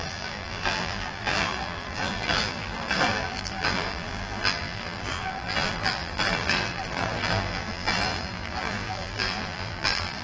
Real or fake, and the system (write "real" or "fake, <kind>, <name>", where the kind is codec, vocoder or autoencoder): fake, vocoder, BigVGAN v2